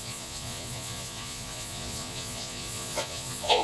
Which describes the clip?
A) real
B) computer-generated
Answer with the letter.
B